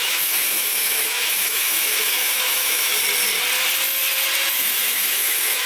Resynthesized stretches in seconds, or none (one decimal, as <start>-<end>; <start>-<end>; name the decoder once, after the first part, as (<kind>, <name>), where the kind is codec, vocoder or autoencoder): 0.0-2.9 (autoencoder, DAC-VAE); 4.6-5.7